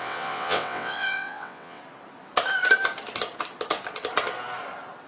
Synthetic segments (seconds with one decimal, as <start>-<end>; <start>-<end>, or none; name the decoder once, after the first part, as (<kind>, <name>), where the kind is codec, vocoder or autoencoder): 0.0-1.8 (vocoder, WaveNeXt)